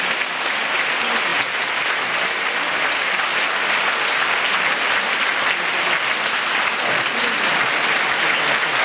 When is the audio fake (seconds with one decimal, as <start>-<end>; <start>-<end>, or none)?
none